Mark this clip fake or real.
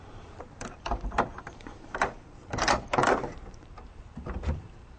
fake